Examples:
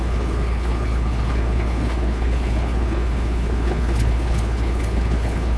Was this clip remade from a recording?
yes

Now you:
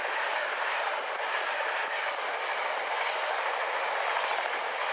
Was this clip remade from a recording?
no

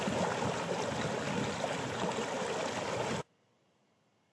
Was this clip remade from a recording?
no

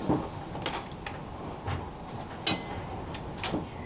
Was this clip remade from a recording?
no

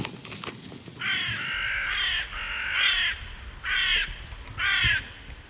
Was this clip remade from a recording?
no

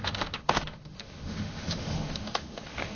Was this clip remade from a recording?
yes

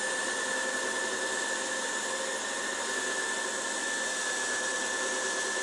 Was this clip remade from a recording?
no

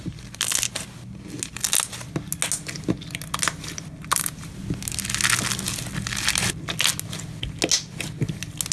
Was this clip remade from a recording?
no